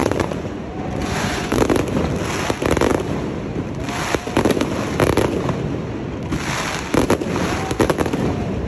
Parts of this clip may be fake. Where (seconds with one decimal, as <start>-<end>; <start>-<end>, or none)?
0.0-1.6